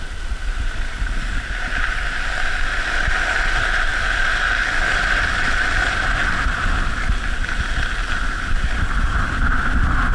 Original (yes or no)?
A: yes